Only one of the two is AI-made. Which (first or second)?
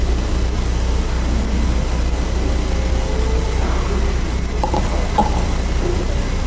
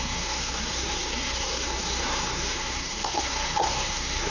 second